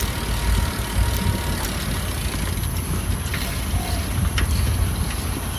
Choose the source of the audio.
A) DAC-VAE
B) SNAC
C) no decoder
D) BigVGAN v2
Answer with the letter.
C